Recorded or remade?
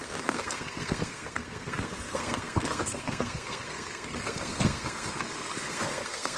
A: remade